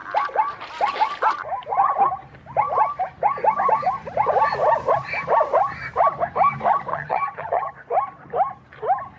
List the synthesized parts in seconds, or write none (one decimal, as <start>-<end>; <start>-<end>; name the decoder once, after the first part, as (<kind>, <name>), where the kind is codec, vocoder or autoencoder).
6.9-7.7 (vocoder, HiFi-GAN)